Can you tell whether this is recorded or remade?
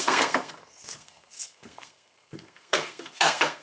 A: remade